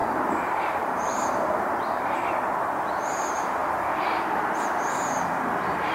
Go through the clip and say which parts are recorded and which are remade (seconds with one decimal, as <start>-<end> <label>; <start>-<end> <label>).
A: 0.0-2.7 remade; 2.7-3.6 recorded; 3.6-4.5 remade; 4.5-5.9 recorded